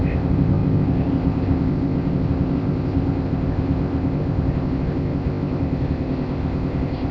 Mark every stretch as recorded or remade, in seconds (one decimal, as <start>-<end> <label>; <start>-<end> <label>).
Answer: 0.0-7.1 remade